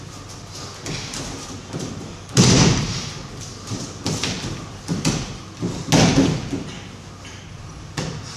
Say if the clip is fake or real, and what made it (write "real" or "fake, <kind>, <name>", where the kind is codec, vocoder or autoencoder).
real